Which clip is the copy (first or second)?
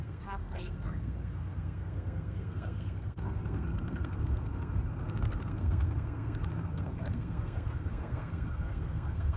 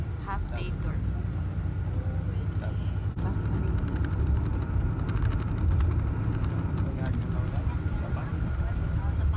first